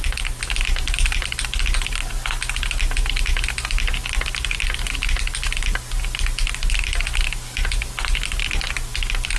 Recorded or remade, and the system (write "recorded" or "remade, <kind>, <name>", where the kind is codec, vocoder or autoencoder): recorded